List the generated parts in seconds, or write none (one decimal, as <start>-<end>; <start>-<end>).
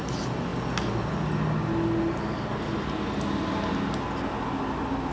none